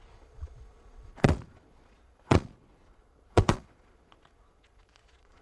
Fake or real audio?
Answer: fake